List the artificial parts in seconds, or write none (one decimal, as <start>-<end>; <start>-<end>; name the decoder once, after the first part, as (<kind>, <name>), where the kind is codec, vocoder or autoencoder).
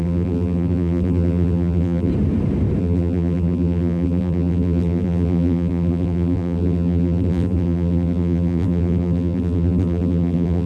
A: 0.0-2.1 (vocoder, BigVGAN v2); 2.8-10.7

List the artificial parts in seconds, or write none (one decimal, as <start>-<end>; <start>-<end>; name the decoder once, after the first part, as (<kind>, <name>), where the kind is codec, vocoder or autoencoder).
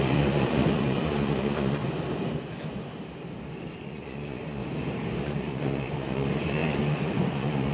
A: 0.0-1.8 (vocoder, Vocos); 3.8-4.6; 5.2-7.7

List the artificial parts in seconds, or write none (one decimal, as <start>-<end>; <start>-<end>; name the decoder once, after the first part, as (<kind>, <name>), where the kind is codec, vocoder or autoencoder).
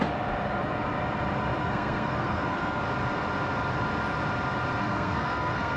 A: 1.6-2.8 (codec, SNAC); 4.8-5.8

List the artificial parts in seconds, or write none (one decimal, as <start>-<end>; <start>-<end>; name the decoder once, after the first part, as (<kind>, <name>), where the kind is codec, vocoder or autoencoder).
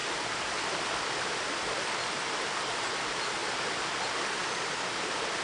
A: none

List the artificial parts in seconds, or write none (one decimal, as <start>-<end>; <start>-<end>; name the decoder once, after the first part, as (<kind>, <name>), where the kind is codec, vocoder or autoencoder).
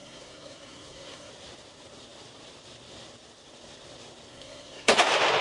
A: 0.0-1.3 (codec, SNAC); 4.3-4.9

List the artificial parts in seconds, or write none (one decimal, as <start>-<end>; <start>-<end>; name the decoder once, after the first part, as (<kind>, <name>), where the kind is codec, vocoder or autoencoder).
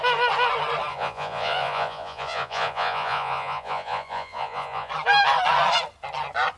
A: 0.9-4.9 (vocoder, Vocos)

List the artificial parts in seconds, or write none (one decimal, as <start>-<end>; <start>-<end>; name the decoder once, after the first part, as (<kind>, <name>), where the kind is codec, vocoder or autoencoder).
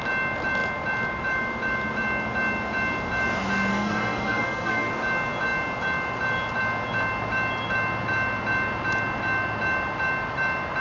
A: 3.7-4.9 (codec, SNAC)